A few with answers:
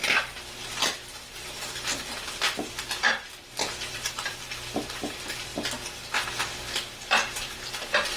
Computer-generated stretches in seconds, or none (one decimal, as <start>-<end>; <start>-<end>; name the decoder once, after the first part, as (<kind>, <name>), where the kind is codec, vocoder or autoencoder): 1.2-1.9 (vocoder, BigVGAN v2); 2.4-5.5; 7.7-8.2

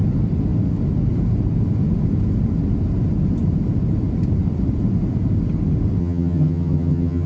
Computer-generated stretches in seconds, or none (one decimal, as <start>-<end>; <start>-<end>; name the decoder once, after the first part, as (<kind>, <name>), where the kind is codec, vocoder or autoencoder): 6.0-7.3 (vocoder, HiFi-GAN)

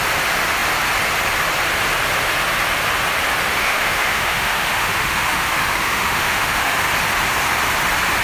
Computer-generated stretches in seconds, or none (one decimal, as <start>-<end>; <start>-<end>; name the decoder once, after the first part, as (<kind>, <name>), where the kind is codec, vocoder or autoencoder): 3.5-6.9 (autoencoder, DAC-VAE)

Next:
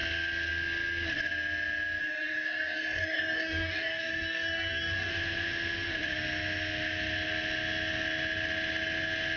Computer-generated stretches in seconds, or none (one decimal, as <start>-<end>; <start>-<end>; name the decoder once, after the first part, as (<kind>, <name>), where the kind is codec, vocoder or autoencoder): 2.0-5.1 (codec, DAC)